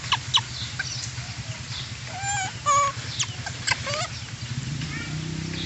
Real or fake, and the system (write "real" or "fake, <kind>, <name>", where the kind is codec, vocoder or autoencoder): real